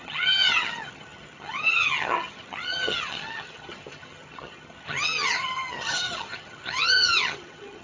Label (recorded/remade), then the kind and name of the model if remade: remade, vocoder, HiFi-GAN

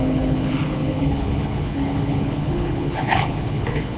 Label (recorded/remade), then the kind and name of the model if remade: remade, codec, HILCodec